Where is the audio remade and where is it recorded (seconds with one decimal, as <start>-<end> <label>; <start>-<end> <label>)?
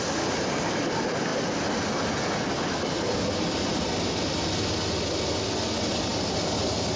0.0-7.0 recorded